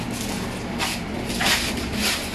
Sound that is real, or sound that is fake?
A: real